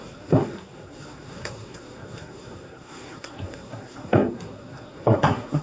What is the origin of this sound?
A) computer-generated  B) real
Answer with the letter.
A